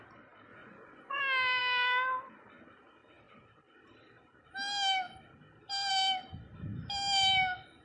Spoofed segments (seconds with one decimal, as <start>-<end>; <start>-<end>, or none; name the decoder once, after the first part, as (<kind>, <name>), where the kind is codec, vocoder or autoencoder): 0.5-1.2 (vocoder, Vocos)